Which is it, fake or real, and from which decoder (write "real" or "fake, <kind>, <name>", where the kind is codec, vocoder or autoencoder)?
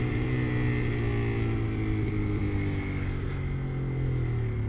real